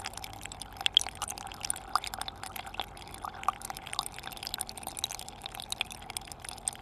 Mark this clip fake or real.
real